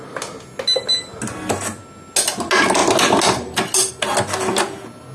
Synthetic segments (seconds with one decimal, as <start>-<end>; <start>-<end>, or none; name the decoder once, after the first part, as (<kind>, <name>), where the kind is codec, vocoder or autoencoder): none